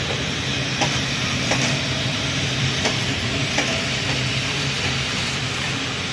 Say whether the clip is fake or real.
fake